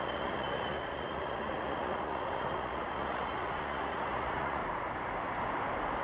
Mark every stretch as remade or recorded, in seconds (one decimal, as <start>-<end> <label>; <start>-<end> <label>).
0.0-4.6 remade; 4.6-6.0 recorded